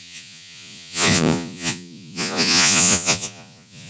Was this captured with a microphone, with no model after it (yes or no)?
no